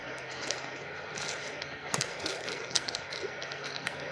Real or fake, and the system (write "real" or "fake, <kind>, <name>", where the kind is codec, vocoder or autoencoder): fake, codec, SNAC